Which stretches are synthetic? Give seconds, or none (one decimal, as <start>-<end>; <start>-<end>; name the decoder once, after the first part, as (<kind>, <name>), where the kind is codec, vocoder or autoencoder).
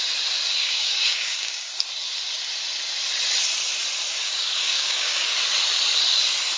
0.6-1.7 (codec, DAC); 4.2-5.3